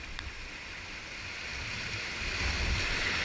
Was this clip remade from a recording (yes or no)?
no